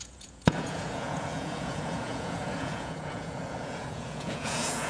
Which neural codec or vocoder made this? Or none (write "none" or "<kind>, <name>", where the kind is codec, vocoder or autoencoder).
vocoder, Vocos